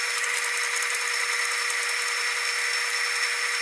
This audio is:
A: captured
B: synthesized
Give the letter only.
A